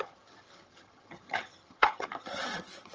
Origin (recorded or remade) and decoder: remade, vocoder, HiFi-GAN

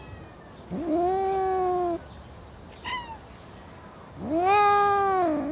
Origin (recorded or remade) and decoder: recorded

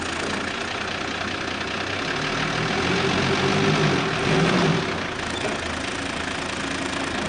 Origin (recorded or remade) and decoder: recorded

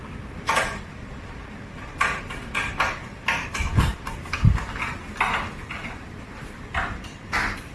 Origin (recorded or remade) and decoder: remade, vocoder, BigVGAN v2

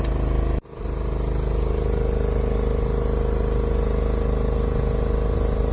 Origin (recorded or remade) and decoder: recorded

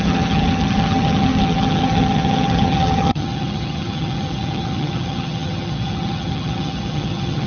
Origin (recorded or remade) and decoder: remade, vocoder, HiFi-GAN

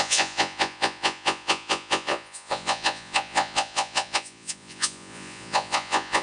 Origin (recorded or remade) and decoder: remade, vocoder, Vocos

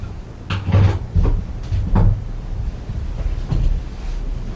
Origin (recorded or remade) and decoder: recorded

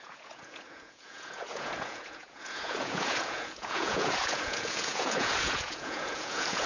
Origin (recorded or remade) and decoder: remade, vocoder, Vocos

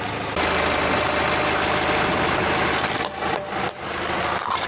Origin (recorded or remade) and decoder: recorded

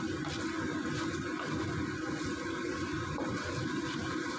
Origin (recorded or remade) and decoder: recorded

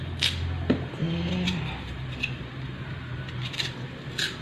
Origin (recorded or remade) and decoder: remade, vocoder, BigVGAN v2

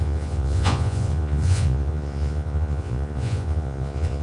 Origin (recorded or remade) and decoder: remade, vocoder, Vocos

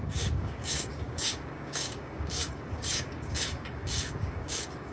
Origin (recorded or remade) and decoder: remade, codec, DAC